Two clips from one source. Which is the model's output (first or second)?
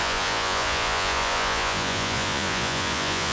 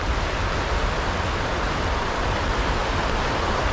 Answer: first